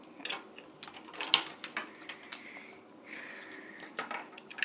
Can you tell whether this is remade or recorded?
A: recorded